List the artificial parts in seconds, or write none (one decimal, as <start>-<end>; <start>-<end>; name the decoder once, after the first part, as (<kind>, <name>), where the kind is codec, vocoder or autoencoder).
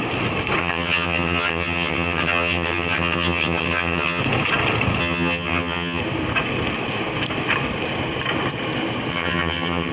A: 0.6-4.2 (vocoder, HiFi-GAN); 5.0-6.0; 9.1-9.9